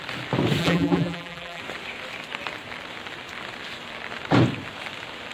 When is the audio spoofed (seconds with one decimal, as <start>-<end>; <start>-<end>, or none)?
0.6-1.6